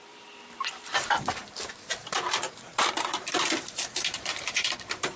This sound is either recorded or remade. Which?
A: remade